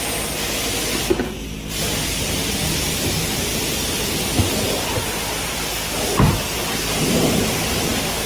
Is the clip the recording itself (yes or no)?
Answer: yes